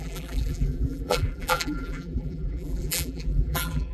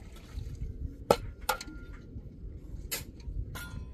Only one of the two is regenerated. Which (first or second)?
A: first